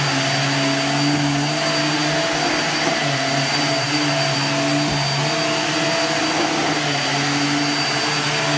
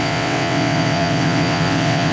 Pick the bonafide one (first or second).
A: first